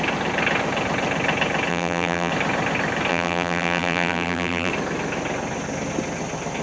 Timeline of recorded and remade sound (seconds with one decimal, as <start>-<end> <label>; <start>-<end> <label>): 0.0-1.7 recorded; 1.7-2.3 remade; 2.3-3.1 recorded; 3.1-4.7 remade; 4.7-6.6 recorded